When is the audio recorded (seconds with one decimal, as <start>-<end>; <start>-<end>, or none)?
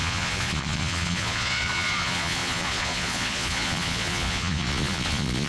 none